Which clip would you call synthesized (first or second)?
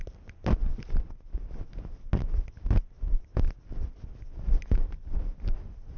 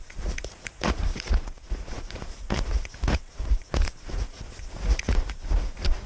second